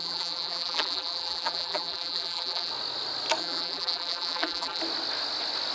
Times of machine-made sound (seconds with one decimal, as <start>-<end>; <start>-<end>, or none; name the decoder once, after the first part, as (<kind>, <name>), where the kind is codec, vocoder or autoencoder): 0.0-2.7 (vocoder, BigVGAN v2); 3.4-4.8